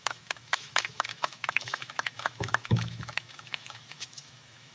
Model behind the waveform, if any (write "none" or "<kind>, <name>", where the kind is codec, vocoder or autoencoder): autoencoder, DAC-VAE